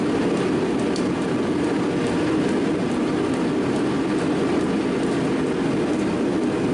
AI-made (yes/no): yes